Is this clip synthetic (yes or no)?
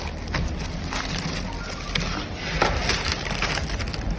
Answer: no